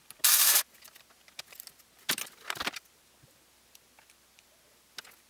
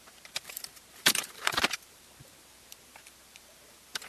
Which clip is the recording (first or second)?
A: first